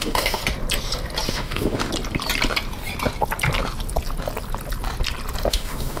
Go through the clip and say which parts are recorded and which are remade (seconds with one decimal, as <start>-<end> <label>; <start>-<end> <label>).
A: 0.0-0.4 remade; 0.4-1.3 recorded; 1.3-1.9 remade; 1.9-5.5 recorded; 5.5-6.0 remade